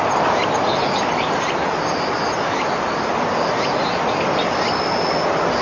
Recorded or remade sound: recorded